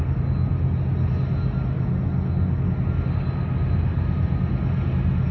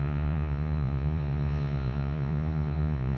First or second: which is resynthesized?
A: second